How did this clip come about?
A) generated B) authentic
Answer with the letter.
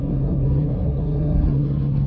A